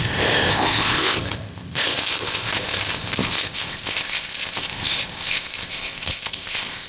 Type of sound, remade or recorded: remade